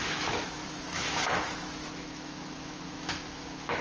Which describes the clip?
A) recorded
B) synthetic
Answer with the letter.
B